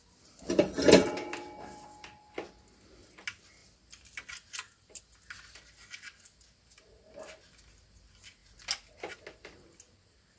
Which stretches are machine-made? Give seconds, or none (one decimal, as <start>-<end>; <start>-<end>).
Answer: none